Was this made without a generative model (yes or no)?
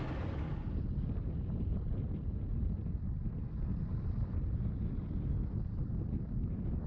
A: yes